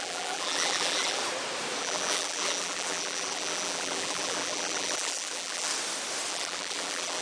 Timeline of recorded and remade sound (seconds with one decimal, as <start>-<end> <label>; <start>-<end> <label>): 0.0-1.2 remade; 1.2-1.8 recorded; 1.8-5.7 remade; 5.7-6.3 recorded; 6.3-7.2 remade